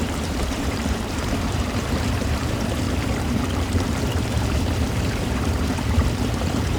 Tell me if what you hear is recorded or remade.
remade